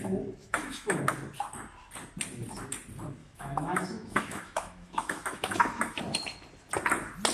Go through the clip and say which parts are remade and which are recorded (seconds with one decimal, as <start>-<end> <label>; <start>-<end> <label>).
0.0-0.4 recorded; 0.4-1.0 remade; 1.0-3.2 recorded; 3.2-6.0 remade; 6.0-7.3 recorded